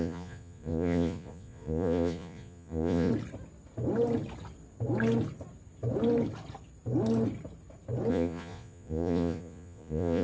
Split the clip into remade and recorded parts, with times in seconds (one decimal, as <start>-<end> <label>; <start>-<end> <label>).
0.0-3.1 remade; 3.1-8.1 recorded; 8.1-10.2 remade